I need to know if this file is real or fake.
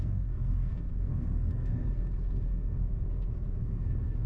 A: fake